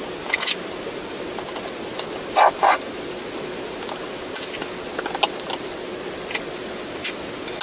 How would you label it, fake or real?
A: real